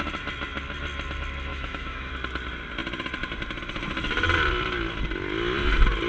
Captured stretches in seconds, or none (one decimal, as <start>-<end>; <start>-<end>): 0.0-1.5; 2.1-6.1